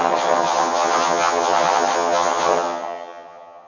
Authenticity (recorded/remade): remade